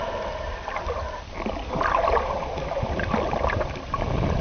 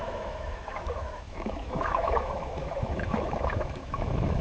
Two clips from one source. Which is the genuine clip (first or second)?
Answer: first